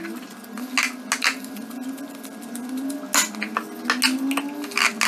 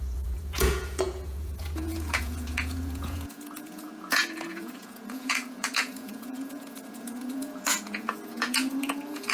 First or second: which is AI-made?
second